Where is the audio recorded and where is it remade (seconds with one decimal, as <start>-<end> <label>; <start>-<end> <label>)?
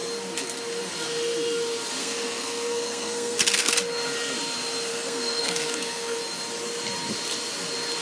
0.0-2.0 recorded; 2.0-3.7 remade; 3.7-4.9 recorded; 4.9-6.2 remade; 6.2-8.0 recorded